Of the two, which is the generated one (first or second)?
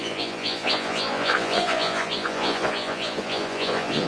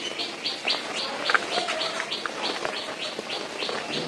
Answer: first